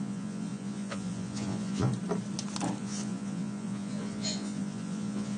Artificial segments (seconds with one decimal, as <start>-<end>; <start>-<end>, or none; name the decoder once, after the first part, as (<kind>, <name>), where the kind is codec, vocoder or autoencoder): 0.0-1.9 (vocoder, Vocos); 2.8-5.4